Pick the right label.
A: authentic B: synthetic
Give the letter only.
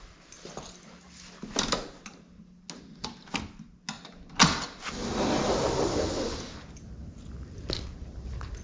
A